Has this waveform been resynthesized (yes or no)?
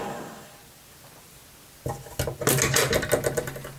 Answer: no